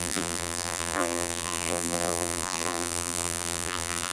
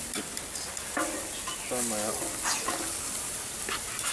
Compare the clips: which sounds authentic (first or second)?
second